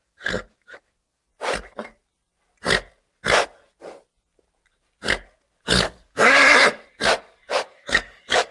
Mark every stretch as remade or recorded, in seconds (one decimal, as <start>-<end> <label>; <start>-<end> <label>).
0.0-1.3 remade; 1.3-5.7 recorded; 5.7-6.4 remade; 6.4-7.5 recorded; 7.5-8.5 remade